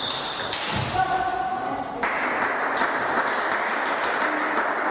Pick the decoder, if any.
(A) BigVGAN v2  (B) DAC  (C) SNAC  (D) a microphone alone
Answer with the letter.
D